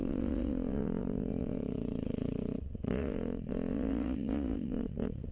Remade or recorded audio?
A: remade